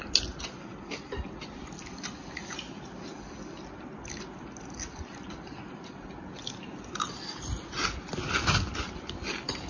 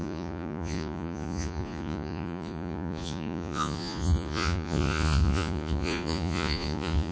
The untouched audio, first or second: first